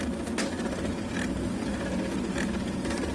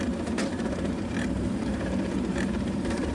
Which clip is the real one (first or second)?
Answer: first